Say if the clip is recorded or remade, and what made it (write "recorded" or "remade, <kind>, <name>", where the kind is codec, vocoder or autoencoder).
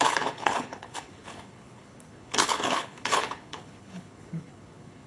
remade, codec, HILCodec